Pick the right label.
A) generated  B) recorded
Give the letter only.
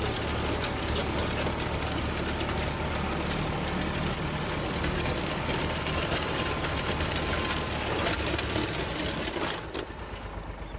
B